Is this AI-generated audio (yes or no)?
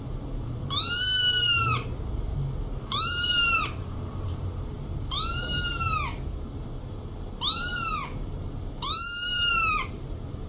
yes